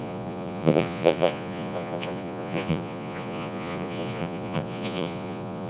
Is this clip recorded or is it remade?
remade